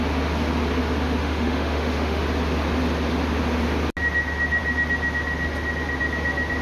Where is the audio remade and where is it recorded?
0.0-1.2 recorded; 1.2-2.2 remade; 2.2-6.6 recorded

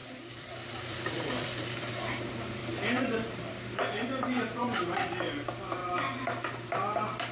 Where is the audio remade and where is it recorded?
0.0-1.9 remade; 1.9-7.3 recorded

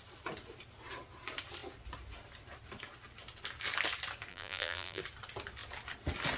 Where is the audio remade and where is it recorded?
0.0-4.3 recorded; 4.3-5.0 remade; 5.0-6.4 recorded